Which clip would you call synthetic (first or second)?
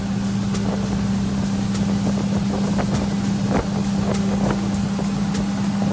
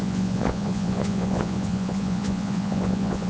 second